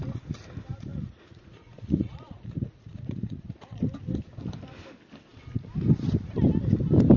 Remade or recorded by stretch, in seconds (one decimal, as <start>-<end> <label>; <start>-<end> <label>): 0.0-0.9 recorded; 0.9-3.8 remade; 3.8-7.2 recorded